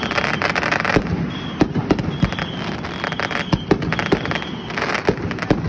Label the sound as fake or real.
real